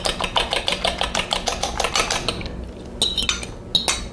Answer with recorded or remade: recorded